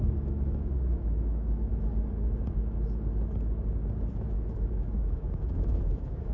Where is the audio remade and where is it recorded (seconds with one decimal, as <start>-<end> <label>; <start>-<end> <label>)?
0.0-1.7 remade; 1.7-4.1 recorded; 4.1-6.3 remade